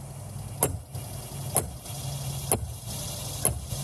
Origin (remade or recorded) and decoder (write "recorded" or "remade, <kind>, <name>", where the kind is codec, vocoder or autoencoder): recorded